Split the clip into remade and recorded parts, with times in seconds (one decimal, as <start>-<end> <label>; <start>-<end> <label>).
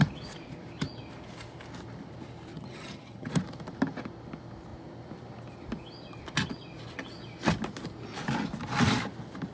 0.0-2.5 recorded; 2.5-3.3 remade; 3.3-9.5 recorded